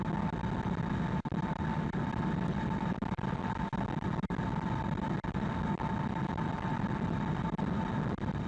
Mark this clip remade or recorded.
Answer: recorded